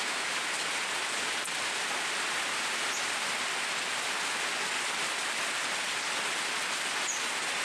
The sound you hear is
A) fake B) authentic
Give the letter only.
B